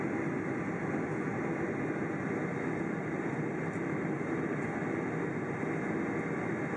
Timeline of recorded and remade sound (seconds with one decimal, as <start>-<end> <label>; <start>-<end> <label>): 0.0-6.8 recorded